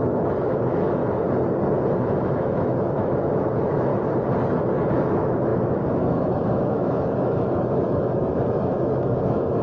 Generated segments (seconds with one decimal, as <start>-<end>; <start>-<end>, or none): 0.0-1.0; 2.0-3.9; 4.9-9.6